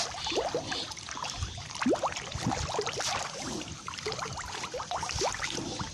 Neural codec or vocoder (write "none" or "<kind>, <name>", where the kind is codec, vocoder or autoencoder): none